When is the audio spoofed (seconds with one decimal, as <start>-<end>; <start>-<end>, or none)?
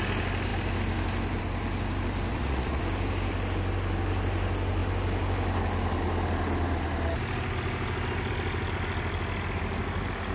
2.3-2.8